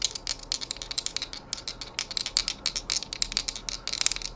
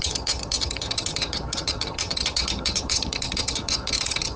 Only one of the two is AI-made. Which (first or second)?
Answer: second